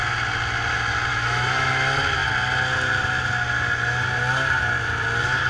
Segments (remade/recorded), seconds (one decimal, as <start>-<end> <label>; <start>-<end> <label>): 0.0-1.1 recorded; 1.1-1.7 remade; 1.7-5.5 recorded